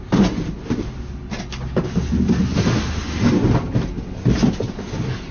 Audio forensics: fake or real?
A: real